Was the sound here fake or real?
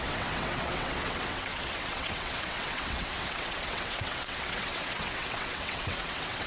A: fake